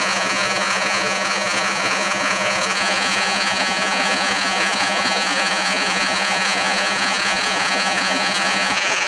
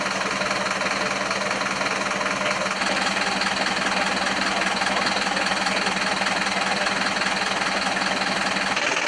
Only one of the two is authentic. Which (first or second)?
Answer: second